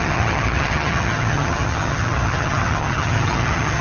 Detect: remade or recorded remade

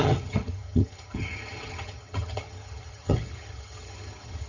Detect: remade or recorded remade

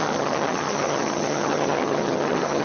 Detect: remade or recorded remade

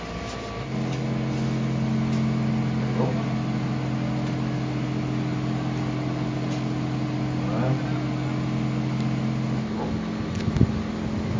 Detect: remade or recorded recorded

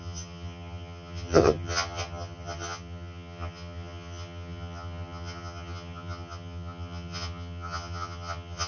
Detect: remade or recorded remade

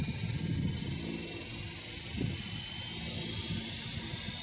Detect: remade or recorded recorded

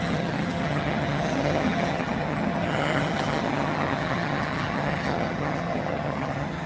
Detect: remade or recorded remade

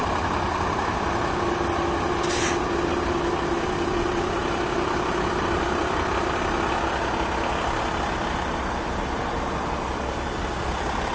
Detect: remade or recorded recorded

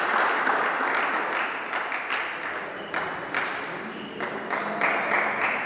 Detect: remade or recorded recorded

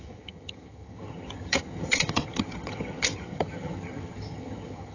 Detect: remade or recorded remade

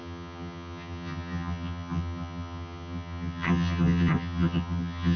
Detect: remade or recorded remade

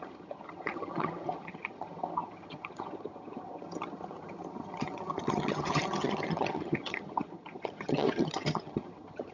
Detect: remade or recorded remade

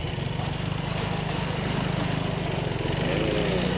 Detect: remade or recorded recorded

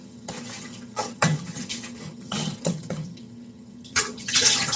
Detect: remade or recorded remade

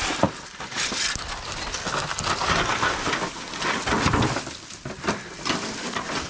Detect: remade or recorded recorded